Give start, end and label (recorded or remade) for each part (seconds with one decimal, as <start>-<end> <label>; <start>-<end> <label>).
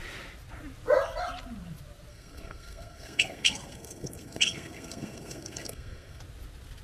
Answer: 0.0-2.1 recorded; 2.1-6.2 remade; 6.2-6.8 recorded